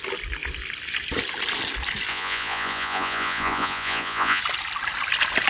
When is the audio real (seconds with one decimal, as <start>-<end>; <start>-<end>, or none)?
0.0-2.1; 4.4-5.5